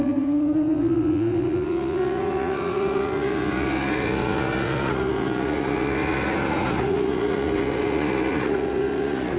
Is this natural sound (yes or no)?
no